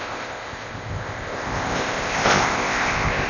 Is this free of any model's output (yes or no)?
no